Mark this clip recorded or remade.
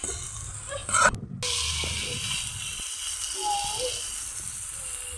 recorded